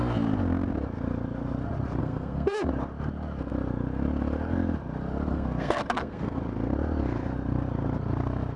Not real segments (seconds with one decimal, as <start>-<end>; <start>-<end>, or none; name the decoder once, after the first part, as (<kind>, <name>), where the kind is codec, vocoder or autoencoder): 2.0-2.7 (codec, SNAC); 5.3-6.4